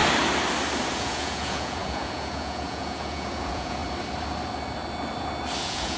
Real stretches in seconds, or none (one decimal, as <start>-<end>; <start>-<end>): 0.0-0.9; 3.8-5.6